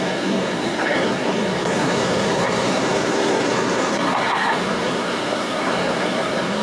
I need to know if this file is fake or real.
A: fake